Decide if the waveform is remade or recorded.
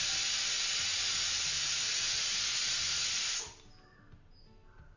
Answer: recorded